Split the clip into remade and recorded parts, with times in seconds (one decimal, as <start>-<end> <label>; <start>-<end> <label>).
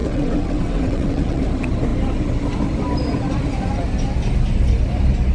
0.0-1.4 remade; 1.4-5.3 recorded